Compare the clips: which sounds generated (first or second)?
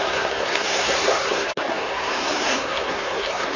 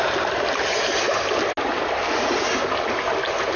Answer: first